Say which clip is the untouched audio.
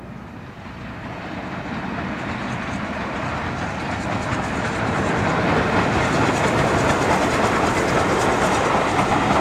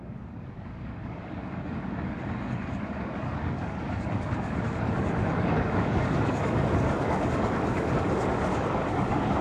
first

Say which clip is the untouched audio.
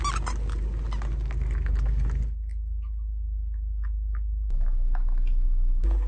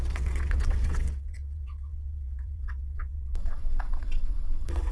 first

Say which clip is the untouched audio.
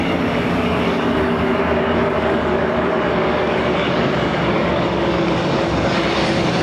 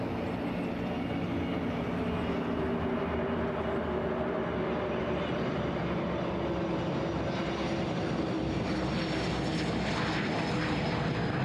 second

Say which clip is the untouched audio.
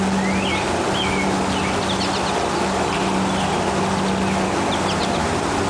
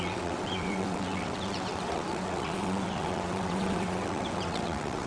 first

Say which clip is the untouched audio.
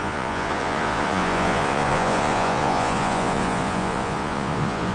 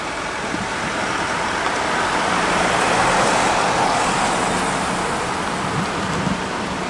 second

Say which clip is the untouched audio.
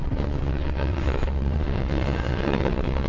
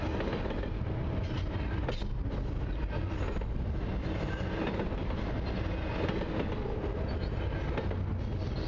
second